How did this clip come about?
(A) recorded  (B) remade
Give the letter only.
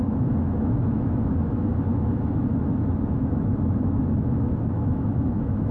B